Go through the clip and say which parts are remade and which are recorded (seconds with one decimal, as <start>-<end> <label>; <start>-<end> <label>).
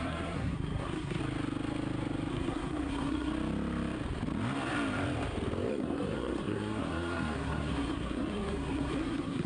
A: 0.0-1.2 remade; 1.2-2.3 recorded; 2.3-3.3 remade; 3.3-5.7 recorded; 5.7-9.5 remade